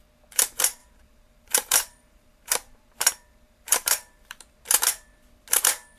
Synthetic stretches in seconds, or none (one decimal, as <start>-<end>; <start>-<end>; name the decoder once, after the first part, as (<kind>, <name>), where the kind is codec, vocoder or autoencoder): 0.8-4.4 (vocoder, BigVGAN v2)